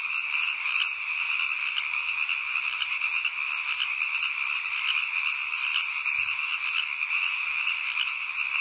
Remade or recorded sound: recorded